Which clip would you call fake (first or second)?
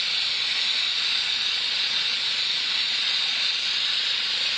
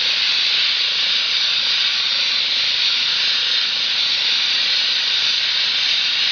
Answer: first